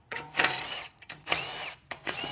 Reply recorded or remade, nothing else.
remade